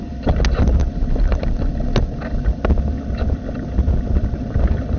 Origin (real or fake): real